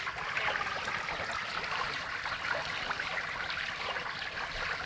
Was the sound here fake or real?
real